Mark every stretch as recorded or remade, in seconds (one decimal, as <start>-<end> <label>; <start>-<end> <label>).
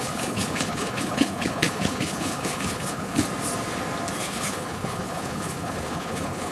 0.0-3.2 remade; 3.2-4.2 recorded; 4.2-6.5 remade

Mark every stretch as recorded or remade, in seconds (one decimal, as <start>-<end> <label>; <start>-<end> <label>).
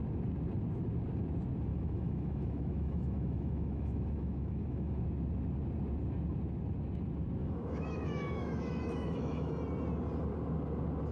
0.0-1.7 recorded; 1.7-5.0 remade; 5.0-7.4 recorded; 7.4-9.5 remade; 9.5-11.1 recorded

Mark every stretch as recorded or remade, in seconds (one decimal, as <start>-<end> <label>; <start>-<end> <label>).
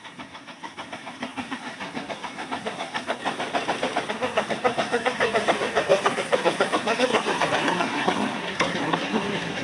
0.0-3.2 remade; 3.2-4.1 recorded; 4.1-9.6 remade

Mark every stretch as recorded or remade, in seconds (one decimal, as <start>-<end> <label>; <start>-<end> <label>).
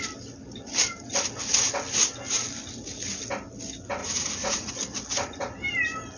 0.0-4.0 recorded; 4.0-4.7 remade; 4.7-6.2 recorded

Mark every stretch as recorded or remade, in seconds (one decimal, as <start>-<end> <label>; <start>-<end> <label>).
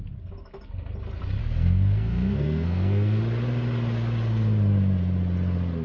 0.0-1.4 recorded; 1.4-3.2 remade; 3.2-5.8 recorded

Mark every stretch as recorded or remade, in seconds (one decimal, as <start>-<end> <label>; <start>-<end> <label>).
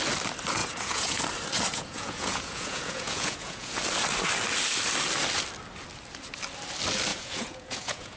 0.0-0.6 recorded; 0.6-1.2 remade; 1.2-1.7 recorded; 1.7-3.8 remade; 3.8-7.1 recorded; 7.1-8.2 remade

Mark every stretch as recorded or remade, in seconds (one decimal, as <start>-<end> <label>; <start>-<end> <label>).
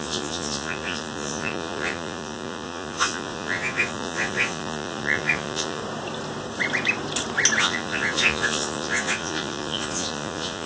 0.0-5.8 remade; 5.8-7.6 recorded; 7.6-10.7 remade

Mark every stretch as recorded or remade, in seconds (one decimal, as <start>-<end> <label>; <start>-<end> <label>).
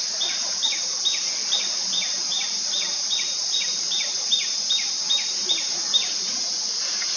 0.0-0.7 remade; 0.7-1.9 recorded; 1.9-7.2 remade